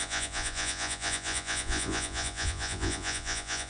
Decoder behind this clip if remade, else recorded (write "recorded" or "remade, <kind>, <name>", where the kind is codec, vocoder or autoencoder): remade, vocoder, Vocos